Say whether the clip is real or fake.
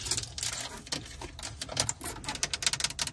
real